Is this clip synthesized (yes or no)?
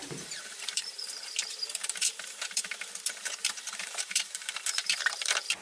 yes